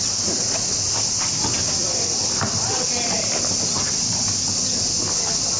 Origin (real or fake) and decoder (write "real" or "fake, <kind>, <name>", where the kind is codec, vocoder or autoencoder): real